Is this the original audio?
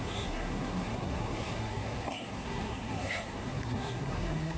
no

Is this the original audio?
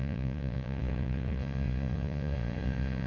no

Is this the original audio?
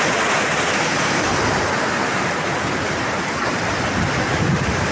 yes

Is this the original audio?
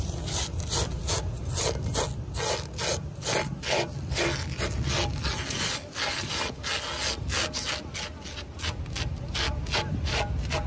yes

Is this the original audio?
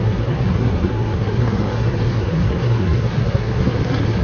no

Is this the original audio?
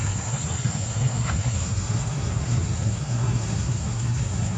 no